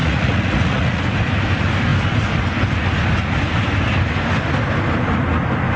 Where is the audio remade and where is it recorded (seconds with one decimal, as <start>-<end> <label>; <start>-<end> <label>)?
0.0-1.0 remade; 1.0-5.8 recorded